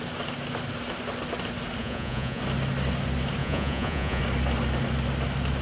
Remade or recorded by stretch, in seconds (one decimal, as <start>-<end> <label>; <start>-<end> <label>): 0.0-1.8 recorded; 1.8-2.4 remade; 2.4-3.4 recorded; 3.4-4.2 remade; 4.2-5.6 recorded